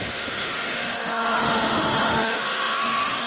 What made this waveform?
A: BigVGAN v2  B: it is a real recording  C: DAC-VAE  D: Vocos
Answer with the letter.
C